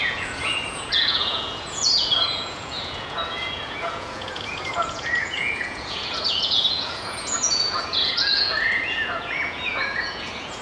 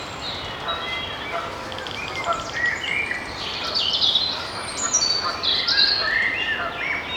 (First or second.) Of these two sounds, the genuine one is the second